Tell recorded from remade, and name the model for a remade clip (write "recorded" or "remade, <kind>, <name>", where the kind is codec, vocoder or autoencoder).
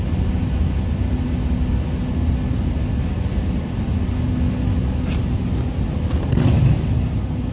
recorded